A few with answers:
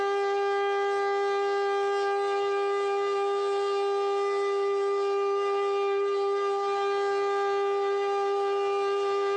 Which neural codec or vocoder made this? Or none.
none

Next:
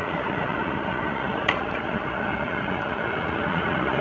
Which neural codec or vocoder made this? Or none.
vocoder, Vocos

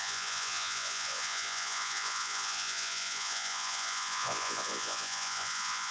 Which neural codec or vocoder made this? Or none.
vocoder, Vocos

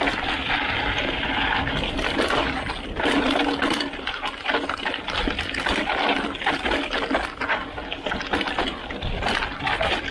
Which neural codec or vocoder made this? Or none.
none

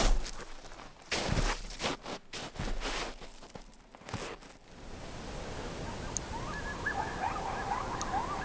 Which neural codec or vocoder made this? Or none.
none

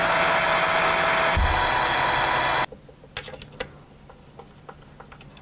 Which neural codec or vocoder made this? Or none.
none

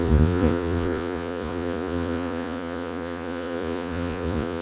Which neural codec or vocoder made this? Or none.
vocoder, Vocos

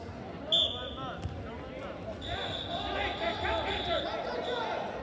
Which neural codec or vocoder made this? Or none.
none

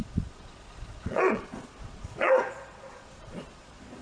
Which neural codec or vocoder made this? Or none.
vocoder, Vocos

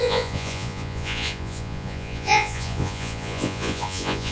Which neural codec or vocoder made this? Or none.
vocoder, Vocos